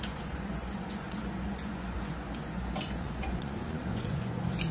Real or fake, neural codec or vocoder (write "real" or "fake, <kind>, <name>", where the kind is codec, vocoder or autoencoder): fake, vocoder, Vocos